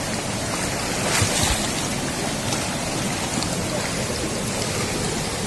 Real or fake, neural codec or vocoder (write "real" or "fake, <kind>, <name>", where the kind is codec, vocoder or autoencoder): real